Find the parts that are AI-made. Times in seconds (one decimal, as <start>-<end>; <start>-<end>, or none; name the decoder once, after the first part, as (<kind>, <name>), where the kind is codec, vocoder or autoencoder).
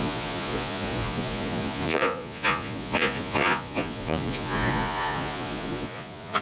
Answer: 0.0-6.4 (vocoder, Vocos)